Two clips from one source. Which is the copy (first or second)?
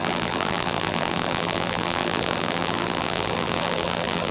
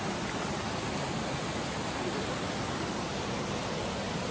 first